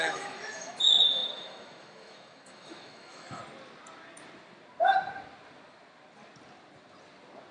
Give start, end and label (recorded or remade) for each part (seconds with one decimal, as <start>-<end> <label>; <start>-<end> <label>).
0.0-3.4 remade; 3.4-7.5 recorded